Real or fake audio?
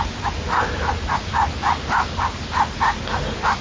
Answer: real